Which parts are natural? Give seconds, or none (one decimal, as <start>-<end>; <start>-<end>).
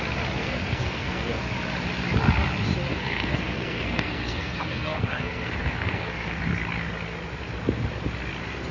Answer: 0.0-0.4; 1.4-2.9; 6.4-8.7